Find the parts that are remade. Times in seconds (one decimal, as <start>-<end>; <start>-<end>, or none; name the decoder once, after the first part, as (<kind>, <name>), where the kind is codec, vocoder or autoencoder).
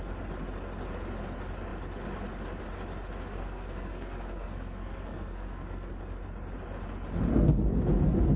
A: 3.3-6.0 (codec, SNAC)